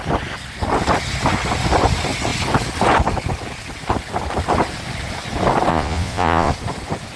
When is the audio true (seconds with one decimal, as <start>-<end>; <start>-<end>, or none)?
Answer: 0.0-5.7; 6.5-7.2